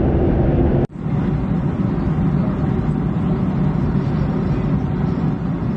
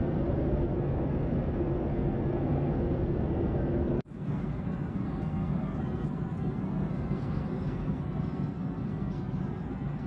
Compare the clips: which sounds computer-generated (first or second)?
second